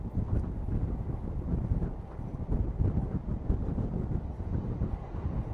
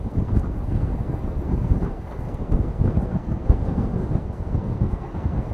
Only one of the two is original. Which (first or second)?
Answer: first